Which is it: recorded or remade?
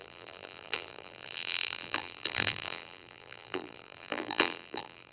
remade